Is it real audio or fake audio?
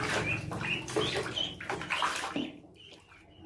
real